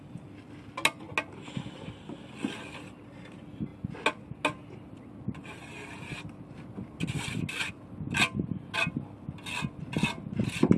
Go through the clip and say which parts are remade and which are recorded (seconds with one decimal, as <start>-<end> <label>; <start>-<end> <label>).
0.0-10.8 recorded